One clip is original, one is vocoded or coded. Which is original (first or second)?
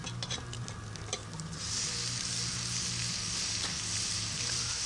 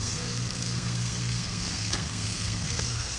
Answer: first